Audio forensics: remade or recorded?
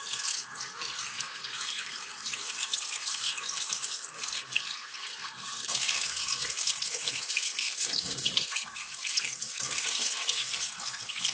remade